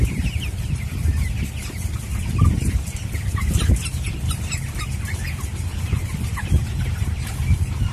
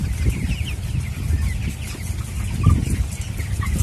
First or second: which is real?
second